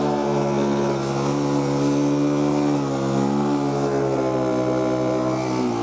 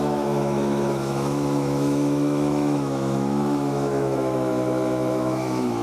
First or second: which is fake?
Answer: second